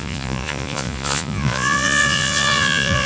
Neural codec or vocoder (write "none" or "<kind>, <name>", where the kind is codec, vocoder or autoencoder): vocoder, Vocos